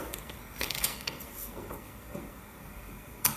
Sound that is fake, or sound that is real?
fake